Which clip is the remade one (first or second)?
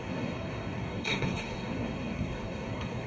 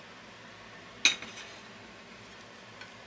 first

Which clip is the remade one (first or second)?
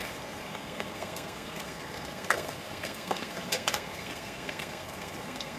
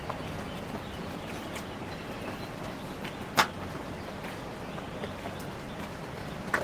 first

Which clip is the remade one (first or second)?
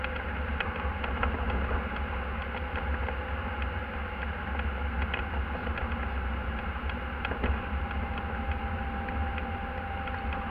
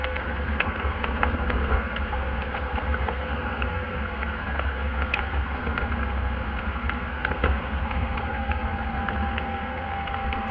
second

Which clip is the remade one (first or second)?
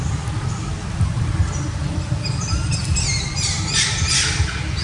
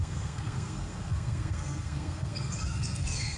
second